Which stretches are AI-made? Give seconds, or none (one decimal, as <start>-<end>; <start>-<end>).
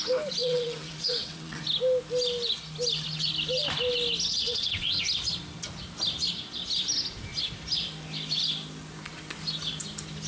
0.4-1.6; 4.3-5.0